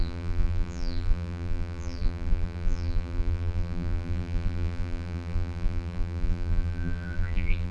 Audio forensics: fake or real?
fake